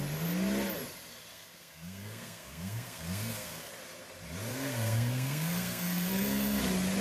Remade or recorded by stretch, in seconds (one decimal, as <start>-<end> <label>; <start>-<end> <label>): 0.0-1.3 recorded; 1.3-3.7 remade; 3.7-4.5 recorded; 4.5-6.6 remade; 6.6-7.0 recorded